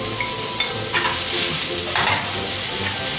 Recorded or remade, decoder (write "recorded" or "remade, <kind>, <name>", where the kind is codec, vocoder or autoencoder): recorded